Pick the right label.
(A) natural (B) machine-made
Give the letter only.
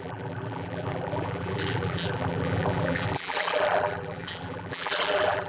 B